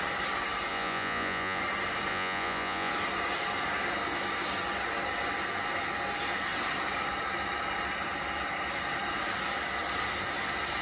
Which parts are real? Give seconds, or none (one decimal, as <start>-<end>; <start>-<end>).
0.0-0.7; 1.6-2.1; 2.9-10.8